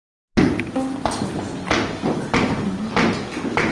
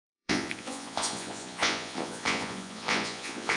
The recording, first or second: first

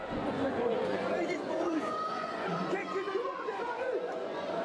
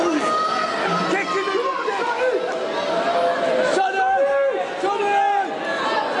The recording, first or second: second